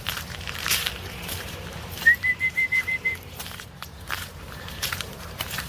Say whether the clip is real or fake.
fake